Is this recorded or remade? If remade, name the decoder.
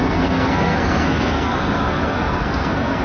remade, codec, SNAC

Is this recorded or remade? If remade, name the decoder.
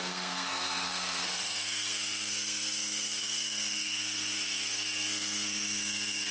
remade, codec, SNAC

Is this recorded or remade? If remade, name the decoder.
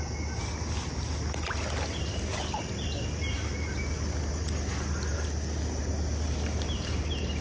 recorded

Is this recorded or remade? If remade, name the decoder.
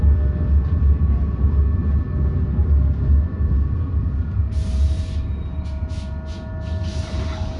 recorded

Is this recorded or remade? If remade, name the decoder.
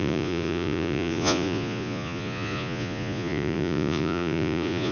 remade, vocoder, Vocos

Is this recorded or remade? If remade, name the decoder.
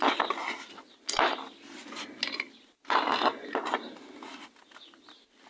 recorded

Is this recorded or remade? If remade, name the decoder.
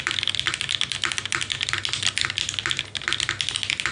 recorded